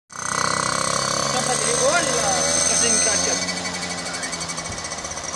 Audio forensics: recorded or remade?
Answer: recorded